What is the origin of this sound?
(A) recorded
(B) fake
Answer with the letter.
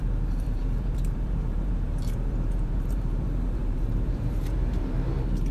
B